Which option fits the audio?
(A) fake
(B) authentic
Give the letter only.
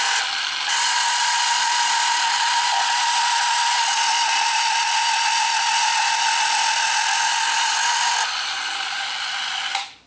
B